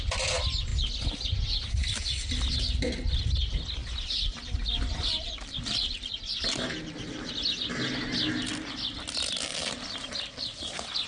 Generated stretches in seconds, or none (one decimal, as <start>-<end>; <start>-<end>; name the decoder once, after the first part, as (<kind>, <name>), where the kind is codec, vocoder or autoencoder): 3.8-6.0 (vocoder, BigVGAN v2); 9.5-10.7